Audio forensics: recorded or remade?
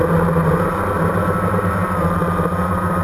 recorded